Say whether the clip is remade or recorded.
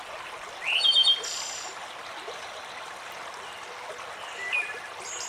recorded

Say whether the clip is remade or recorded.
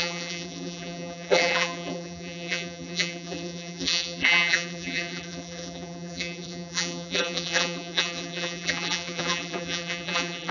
remade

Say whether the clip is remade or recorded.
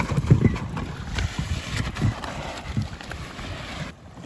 remade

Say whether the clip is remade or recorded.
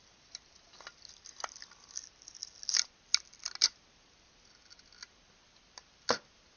recorded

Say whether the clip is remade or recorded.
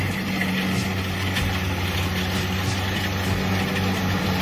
recorded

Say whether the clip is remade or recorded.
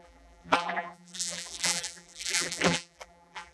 remade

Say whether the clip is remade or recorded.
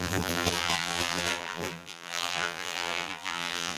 remade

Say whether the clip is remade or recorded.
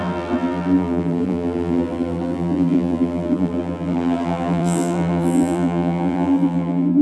remade